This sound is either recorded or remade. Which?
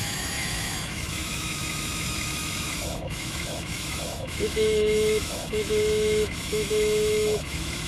remade